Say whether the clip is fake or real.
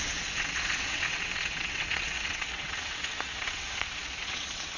fake